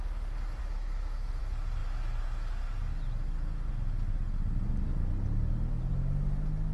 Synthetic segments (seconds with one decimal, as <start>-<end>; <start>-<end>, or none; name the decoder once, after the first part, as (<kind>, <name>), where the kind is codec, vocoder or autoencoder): 0.6-1.4 (autoencoder, DAC-VAE)